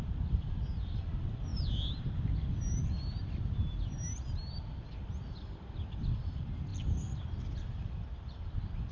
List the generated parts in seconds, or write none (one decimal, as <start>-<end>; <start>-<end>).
0.0-8.9